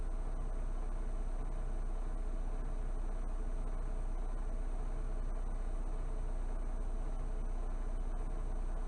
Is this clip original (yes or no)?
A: yes